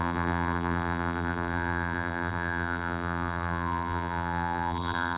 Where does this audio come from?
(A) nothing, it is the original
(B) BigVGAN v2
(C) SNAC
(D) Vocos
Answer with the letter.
B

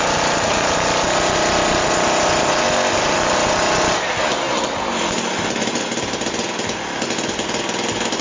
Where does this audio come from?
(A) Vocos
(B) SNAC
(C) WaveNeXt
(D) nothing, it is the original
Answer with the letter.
D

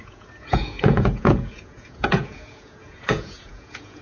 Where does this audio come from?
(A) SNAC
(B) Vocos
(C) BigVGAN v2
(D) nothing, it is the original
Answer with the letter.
B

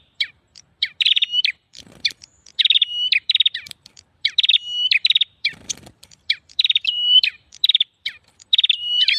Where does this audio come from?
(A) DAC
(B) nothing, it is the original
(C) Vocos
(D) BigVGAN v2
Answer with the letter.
D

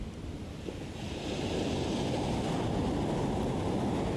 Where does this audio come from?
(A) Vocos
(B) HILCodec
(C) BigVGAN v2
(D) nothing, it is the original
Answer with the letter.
D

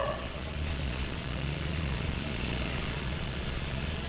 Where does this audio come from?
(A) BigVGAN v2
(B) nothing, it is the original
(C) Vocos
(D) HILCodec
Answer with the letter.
C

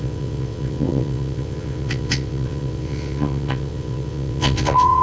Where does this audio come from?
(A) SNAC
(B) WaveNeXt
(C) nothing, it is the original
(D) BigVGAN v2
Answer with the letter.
B